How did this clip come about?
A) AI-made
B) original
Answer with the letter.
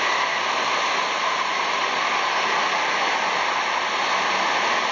B